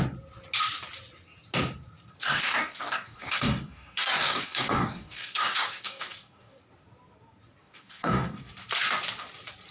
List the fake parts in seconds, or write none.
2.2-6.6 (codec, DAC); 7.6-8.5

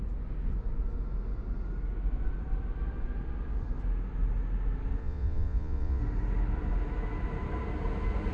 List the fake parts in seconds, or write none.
5.0-6.0 (vocoder, Vocos)

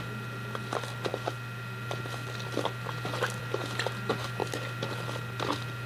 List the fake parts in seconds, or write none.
none